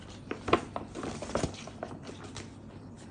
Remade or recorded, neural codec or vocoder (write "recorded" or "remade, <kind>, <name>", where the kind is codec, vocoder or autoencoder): recorded